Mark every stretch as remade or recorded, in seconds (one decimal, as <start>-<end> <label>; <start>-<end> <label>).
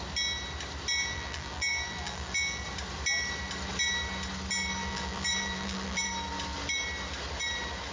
0.0-1.0 recorded; 1.0-2.6 remade; 2.6-4.8 recorded; 4.8-6.1 remade; 6.1-7.9 recorded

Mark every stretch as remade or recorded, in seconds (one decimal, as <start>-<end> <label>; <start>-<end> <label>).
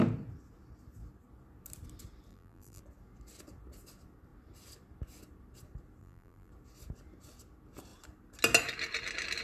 0.0-2.3 recorded; 2.3-2.8 remade; 2.8-6.0 recorded; 6.0-6.5 remade; 6.5-9.4 recorded